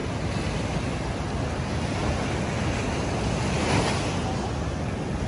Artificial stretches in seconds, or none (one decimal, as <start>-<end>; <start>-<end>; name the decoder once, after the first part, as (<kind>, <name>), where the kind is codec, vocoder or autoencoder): none

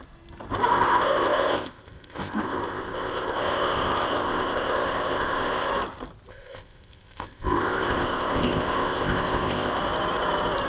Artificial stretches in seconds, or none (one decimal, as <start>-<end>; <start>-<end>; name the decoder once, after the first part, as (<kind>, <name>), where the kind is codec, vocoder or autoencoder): 0.7-5.7 (codec, ZipCodec); 6.3-9.8

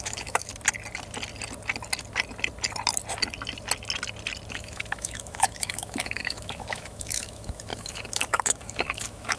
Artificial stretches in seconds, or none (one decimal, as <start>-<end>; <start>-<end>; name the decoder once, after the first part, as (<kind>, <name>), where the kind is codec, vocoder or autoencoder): 0.0-0.5 (autoencoder, DAC-VAE); 4.5-9.4

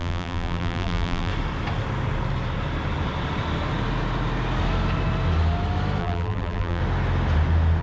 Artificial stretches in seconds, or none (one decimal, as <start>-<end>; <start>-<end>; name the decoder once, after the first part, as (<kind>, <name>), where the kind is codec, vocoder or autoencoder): 0.0-1.3 (vocoder, BigVGAN v2); 6.0-6.8

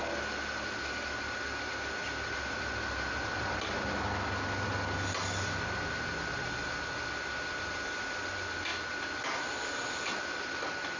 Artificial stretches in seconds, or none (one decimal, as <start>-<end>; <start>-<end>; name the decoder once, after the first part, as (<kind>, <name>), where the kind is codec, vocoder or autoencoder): none

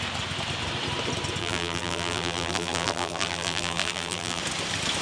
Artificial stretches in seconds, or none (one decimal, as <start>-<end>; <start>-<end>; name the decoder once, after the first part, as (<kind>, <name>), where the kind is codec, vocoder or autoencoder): 1.4-4.4 (vocoder, BigVGAN v2)

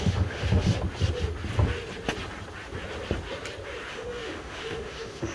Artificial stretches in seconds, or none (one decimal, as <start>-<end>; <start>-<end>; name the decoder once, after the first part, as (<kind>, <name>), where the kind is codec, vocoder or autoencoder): 0.0-0.7 (autoencoder, DAC-VAE); 3.9-5.3